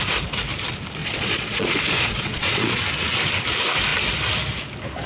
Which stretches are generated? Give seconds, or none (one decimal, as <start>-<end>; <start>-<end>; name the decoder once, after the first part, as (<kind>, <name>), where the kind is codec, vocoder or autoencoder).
1.0-2.8 (vocoder, Vocos)